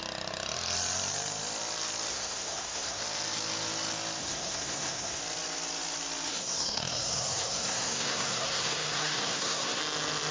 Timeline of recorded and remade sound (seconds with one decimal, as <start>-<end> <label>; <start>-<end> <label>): 0.0-2.1 recorded; 2.1-3.0 remade; 3.0-4.2 recorded; 4.2-5.2 remade; 5.2-6.3 recorded; 6.3-9.8 remade; 9.8-10.3 recorded